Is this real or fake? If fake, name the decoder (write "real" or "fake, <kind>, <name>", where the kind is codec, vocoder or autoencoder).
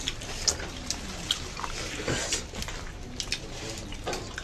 real